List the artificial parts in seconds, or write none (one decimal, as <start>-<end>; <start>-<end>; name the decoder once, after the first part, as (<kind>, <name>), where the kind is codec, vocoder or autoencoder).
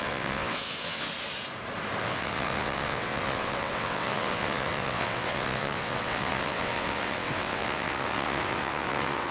0.0-1.1 (vocoder, WaveNeXt); 2.0-9.3